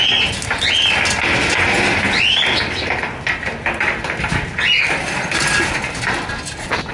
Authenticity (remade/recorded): recorded